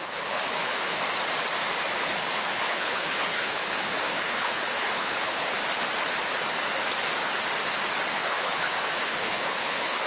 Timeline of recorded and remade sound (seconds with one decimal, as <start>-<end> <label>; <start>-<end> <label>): 0.0-1.0 remade; 1.0-2.0 recorded; 2.0-5.5 remade; 5.5-8.1 recorded; 8.1-10.1 remade